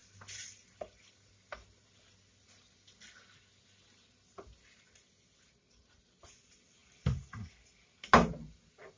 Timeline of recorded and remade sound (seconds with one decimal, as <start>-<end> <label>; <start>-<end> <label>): 0.0-9.0 recorded